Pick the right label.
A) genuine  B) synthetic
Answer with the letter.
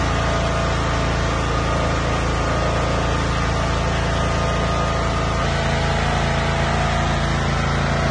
A